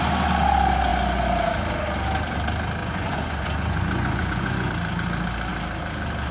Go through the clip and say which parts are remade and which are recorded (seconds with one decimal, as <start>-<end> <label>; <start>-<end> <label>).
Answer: 0.0-2.8 recorded; 2.8-4.7 remade; 4.7-6.3 recorded